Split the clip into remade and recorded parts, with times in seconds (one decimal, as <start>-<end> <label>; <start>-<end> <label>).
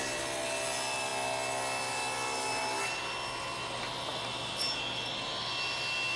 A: 0.0-6.2 recorded